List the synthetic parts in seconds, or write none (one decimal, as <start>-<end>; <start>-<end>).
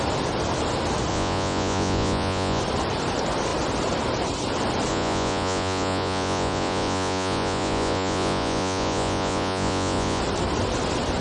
1.1-2.6; 4.9-10.2